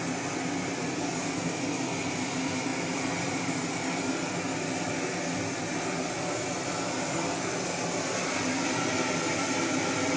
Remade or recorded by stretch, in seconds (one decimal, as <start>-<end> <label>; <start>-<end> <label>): 0.0-10.2 recorded